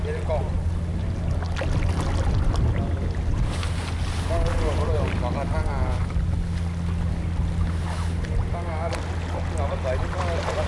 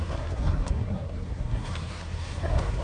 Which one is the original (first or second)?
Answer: first